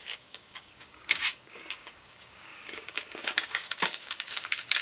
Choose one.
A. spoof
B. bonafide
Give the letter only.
A